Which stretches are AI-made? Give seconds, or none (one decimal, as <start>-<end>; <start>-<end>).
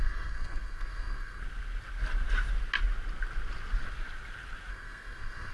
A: 0.0-1.4; 4.7-5.5